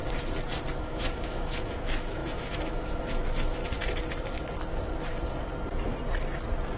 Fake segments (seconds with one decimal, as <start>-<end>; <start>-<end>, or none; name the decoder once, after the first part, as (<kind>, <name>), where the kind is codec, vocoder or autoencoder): 0.8-3.6 (autoencoder, DAC-VAE)